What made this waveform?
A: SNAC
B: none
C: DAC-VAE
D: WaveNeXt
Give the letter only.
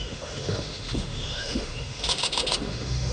C